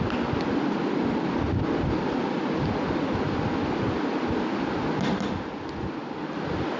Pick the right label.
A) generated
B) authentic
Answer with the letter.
B